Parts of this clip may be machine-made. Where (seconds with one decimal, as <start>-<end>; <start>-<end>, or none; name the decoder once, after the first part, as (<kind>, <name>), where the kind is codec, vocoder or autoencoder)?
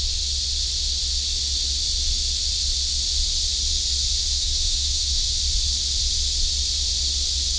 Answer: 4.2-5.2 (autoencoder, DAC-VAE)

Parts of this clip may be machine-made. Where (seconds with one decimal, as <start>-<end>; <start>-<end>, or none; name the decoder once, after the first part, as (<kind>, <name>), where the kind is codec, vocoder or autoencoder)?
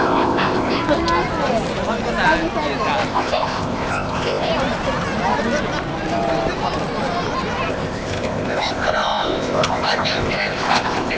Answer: 0.0-0.8 (codec, ZipCodec); 3.1-4.5; 7.7-11.2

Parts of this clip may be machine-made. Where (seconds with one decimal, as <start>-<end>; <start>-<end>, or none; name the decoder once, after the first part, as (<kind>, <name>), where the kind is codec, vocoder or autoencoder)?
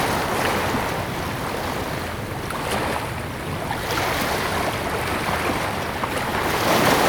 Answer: none